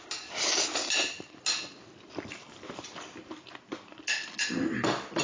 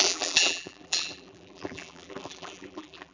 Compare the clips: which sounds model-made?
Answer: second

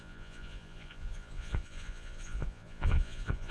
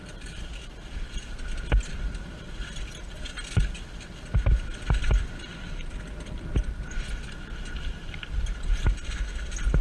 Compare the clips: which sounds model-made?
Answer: first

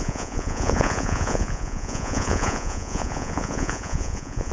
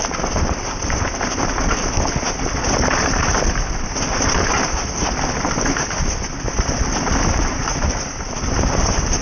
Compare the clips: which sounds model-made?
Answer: first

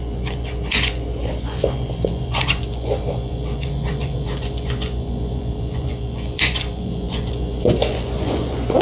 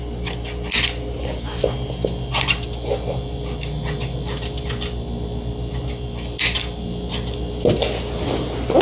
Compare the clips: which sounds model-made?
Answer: first